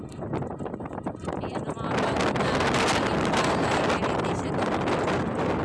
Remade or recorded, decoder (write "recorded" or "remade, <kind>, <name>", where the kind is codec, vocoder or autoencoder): recorded